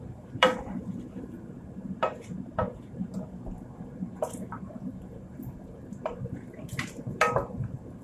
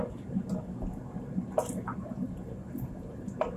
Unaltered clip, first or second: second